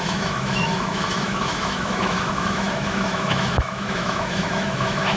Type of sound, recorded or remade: remade